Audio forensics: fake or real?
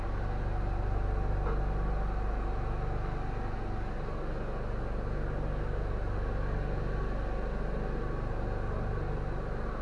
real